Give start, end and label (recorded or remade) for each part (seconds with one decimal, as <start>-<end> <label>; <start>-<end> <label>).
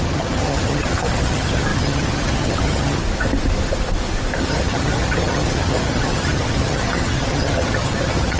0.0-3.0 remade; 3.0-4.4 recorded; 4.4-8.4 remade